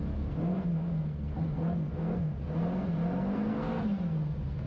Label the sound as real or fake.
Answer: fake